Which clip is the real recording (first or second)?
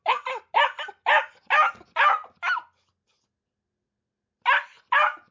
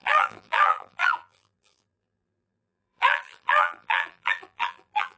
first